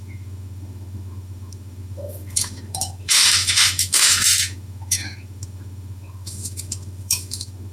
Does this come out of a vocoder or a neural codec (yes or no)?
yes